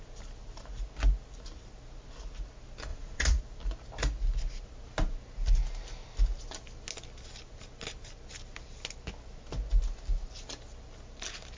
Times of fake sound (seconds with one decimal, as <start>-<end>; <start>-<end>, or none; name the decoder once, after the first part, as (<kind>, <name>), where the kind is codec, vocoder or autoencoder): 2.9-3.4 (vocoder, Vocos)